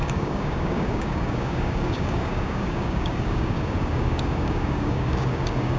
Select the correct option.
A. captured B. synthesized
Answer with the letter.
B